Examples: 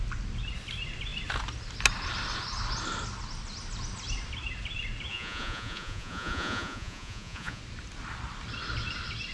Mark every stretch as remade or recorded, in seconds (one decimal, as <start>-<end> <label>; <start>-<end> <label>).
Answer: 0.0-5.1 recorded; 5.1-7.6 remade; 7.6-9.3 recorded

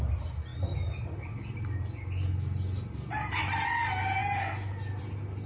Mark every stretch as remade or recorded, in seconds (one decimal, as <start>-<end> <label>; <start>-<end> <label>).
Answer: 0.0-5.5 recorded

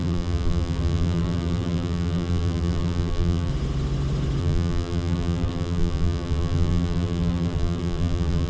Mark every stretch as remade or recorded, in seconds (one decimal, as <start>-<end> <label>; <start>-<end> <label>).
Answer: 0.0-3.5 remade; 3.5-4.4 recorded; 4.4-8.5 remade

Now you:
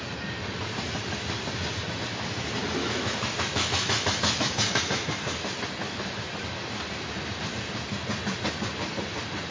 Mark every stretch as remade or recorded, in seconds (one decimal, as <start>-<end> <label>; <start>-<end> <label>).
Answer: 0.0-2.8 recorded; 2.8-4.8 remade; 4.8-5.8 recorded; 5.8-6.3 remade; 6.3-9.5 recorded